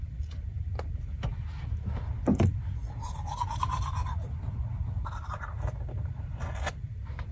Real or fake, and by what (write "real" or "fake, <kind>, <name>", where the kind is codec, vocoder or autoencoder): real